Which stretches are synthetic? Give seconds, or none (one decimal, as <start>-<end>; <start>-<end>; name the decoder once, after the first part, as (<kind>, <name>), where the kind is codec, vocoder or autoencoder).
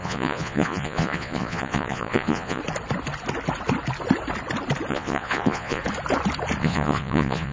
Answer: 0.0-2.6 (vocoder, Vocos); 4.9-5.8; 6.6-7.5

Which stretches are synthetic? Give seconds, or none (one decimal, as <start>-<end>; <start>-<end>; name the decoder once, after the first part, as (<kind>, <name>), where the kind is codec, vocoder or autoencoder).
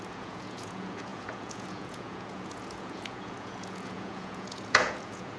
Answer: 0.0-5.4 (vocoder, Vocos)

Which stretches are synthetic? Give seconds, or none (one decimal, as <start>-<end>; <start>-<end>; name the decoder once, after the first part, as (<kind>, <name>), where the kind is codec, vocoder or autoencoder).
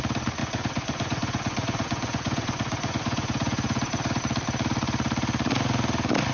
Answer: 0.4-4.2 (vocoder, Vocos)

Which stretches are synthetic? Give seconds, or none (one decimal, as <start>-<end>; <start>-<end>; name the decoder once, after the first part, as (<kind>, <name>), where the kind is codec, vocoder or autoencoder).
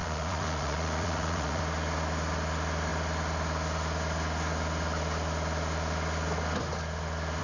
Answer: 0.0-1.6 (vocoder, Vocos)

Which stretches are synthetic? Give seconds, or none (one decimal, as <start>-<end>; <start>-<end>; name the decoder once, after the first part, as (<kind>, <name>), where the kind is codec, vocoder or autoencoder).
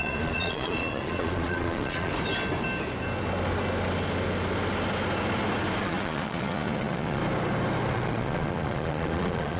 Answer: 0.0-2.1 (vocoder, Vocos); 5.8-7.2; 7.9-9.6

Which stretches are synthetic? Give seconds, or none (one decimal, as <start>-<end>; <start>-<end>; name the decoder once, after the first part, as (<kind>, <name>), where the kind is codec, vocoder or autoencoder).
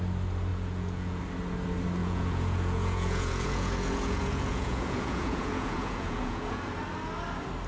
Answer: 0.5-1.2 (vocoder, Vocos); 2.0-6.6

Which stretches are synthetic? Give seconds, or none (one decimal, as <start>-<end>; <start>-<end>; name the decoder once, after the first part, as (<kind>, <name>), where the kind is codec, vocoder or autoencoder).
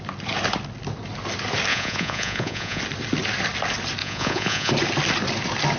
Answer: 1.7-2.8 (vocoder, Vocos); 4.0-4.7